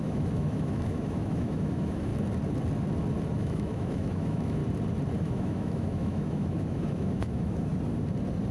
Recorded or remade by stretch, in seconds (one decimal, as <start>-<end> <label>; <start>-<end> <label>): 0.0-2.1 remade; 2.1-3.3 recorded; 3.3-4.6 remade; 4.6-5.2 recorded; 5.2-7.7 remade; 7.7-8.5 recorded